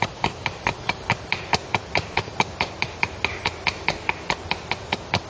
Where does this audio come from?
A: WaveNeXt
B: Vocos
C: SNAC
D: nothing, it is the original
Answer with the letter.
D